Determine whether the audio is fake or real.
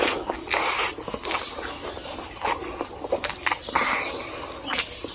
real